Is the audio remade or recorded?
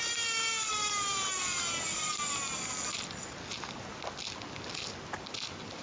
recorded